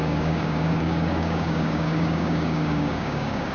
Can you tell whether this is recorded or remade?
remade